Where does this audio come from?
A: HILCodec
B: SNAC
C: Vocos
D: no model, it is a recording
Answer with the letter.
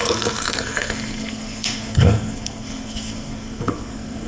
B